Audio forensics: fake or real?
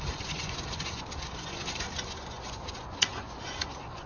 fake